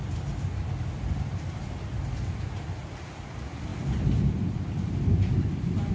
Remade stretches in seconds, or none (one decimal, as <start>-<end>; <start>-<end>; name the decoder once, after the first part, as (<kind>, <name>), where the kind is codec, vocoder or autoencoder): 2.6-3.7 (vocoder, BigVGAN v2); 4.2-5.9